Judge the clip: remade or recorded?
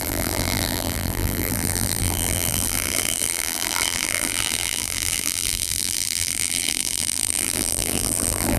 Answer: remade